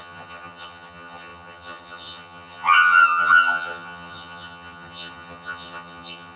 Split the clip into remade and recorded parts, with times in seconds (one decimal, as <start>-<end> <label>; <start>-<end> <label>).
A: 0.0-6.4 remade